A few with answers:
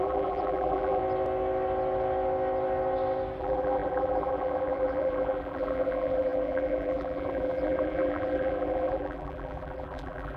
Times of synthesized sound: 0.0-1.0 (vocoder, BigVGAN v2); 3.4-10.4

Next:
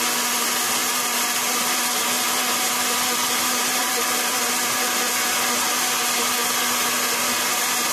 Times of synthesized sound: 0.8-2.0 (vocoder, BigVGAN v2); 3.8-4.4

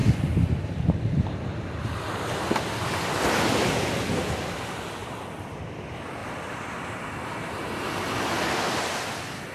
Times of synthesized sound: 0.0-3.3 (vocoder, BigVGAN v2); 5.0-5.6; 6.2-8.2